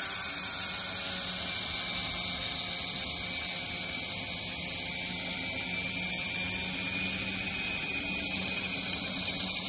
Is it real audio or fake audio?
real